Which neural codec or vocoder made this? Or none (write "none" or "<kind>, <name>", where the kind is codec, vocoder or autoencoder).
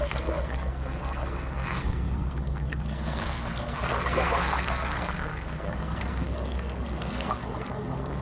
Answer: codec, SNAC